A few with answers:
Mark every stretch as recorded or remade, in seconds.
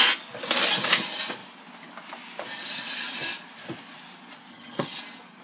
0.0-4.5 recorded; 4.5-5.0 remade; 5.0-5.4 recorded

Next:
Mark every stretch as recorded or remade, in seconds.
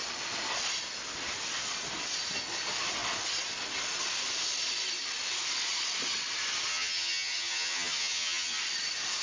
0.0-6.7 recorded; 6.7-8.6 remade; 8.6-9.2 recorded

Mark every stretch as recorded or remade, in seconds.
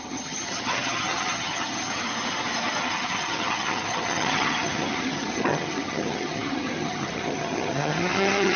0.0-2.1 remade; 2.1-2.8 recorded; 2.8-8.6 remade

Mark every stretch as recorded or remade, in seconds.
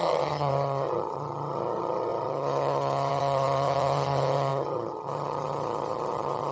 0.0-6.5 remade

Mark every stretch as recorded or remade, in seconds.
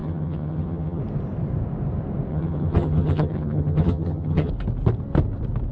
0.0-1.0 remade; 1.0-2.3 recorded; 2.3-4.5 remade; 4.5-5.7 recorded